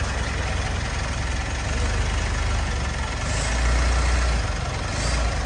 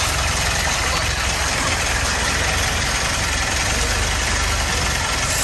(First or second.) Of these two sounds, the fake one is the second